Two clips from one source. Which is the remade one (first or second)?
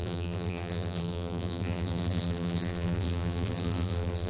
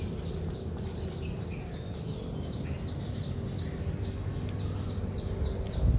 first